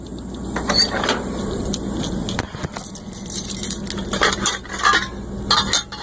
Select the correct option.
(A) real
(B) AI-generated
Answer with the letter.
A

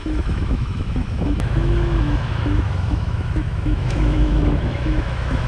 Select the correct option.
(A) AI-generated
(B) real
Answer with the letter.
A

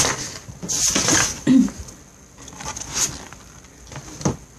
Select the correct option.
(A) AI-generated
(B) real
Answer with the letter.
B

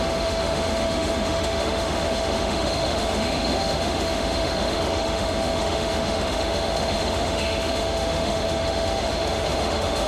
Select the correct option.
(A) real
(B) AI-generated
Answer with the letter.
B